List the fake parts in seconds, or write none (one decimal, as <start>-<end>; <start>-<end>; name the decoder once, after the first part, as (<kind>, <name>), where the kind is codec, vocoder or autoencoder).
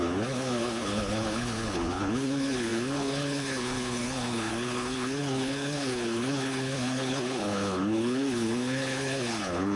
0.0-9.8 (codec, HILCodec)